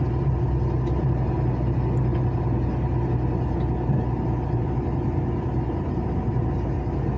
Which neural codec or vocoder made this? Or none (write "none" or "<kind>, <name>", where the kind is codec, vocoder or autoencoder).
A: none